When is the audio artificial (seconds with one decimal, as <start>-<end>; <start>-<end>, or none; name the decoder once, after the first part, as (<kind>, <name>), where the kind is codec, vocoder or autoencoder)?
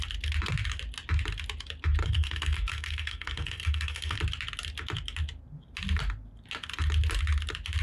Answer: 2.0-4.2 (codec, SNAC)